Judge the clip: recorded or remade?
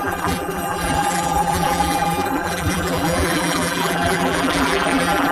remade